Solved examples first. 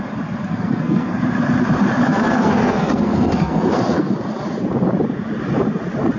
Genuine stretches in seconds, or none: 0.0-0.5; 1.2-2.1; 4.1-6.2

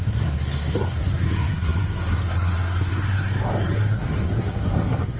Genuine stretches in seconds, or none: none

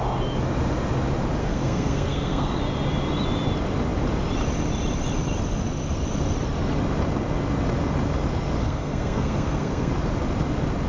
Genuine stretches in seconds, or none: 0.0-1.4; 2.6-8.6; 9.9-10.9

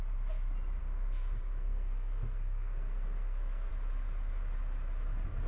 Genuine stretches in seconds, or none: 0.0-0.8; 3.7-5.5